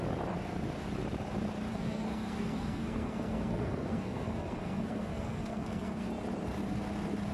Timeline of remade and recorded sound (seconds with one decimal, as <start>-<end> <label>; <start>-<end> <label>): 0.0-1.7 recorded; 1.7-6.1 remade; 6.1-7.3 recorded